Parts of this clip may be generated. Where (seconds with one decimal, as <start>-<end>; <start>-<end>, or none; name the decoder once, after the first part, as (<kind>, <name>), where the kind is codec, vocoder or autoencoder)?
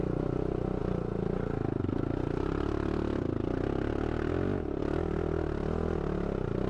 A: none